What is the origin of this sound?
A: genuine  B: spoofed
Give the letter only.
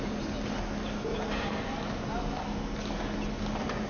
A